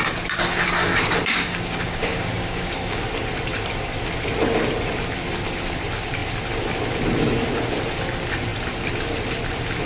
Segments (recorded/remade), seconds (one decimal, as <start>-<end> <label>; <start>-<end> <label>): 0.0-0.9 recorded; 0.9-3.0 remade; 3.0-9.9 recorded